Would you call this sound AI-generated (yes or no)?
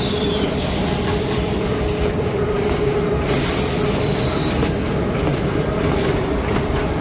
yes